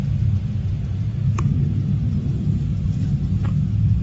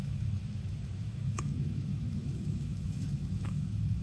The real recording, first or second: first